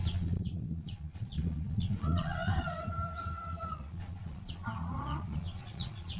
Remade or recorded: remade